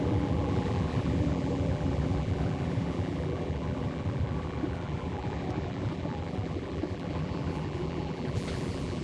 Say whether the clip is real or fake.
fake